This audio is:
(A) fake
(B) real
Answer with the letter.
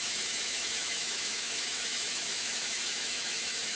A